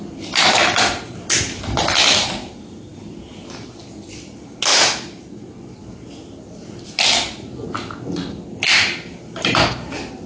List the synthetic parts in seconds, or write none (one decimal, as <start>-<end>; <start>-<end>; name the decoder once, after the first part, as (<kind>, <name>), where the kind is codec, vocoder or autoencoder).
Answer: none